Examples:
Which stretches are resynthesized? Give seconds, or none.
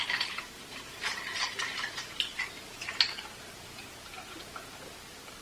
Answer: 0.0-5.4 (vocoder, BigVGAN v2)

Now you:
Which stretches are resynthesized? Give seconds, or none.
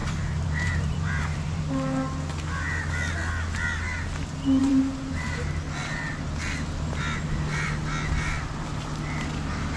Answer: 0.0-1.6 (vocoder, BigVGAN v2); 4.6-5.5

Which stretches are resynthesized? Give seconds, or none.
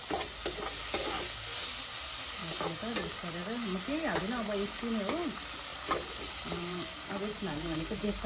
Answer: 5.7-6.8 (vocoder, BigVGAN v2); 7.3-8.3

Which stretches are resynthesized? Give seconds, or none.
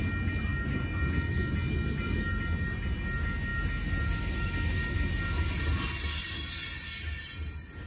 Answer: none